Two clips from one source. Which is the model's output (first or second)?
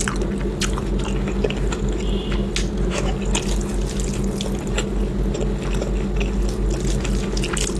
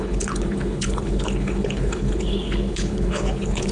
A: second